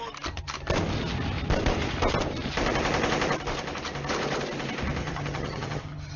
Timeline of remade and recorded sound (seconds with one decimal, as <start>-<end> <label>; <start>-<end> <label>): 0.0-5.0 recorded; 5.0-6.2 remade